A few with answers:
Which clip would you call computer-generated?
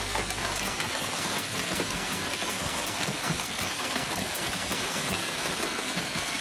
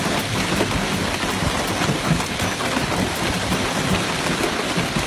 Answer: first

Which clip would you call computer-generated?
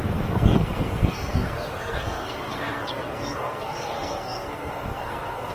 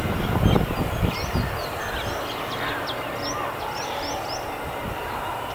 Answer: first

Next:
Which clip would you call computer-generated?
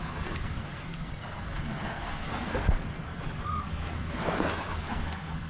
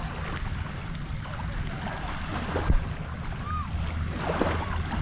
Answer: first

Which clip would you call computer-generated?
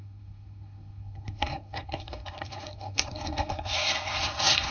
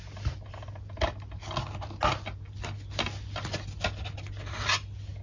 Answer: first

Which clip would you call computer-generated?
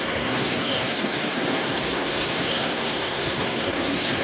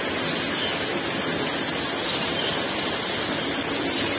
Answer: first